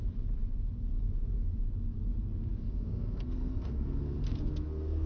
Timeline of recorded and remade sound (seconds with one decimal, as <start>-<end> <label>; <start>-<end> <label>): 0.0-2.6 recorded; 2.6-5.1 remade